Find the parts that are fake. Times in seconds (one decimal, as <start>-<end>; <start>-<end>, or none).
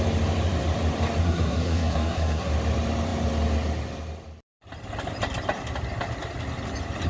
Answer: 1.2-2.5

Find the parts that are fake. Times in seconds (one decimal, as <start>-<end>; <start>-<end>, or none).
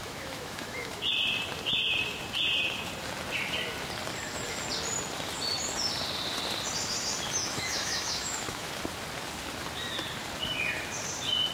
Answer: 0.0-1.0; 7.4-8.7